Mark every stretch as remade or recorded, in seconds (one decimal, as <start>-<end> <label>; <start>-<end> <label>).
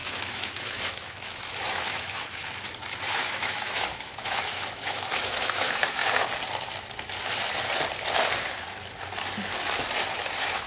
0.0-2.4 remade; 2.4-3.0 recorded; 3.0-6.0 remade; 6.0-10.1 recorded; 10.1-10.7 remade